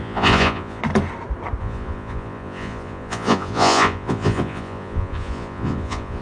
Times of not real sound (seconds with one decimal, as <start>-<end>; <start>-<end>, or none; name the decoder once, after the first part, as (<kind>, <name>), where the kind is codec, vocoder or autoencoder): 0.0-0.8 (vocoder, Vocos); 1.6-6.2